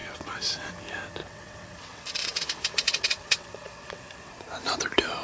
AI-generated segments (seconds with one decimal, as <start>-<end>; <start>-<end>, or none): 0.0-0.7; 1.2-4.3